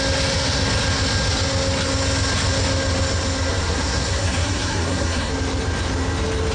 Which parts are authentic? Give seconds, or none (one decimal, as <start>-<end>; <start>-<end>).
0.0-3.5; 5.3-6.5